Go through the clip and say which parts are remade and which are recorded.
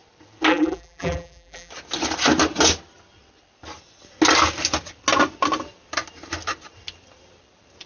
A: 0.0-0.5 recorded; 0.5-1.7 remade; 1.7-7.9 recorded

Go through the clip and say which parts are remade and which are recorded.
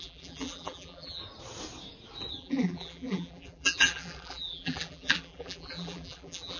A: 0.0-1.2 remade; 1.2-2.4 recorded; 2.4-6.6 remade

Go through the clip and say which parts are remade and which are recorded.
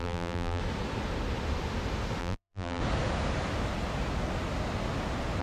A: 0.0-0.6 remade; 0.6-2.2 recorded; 2.2-2.8 remade; 2.8-5.4 recorded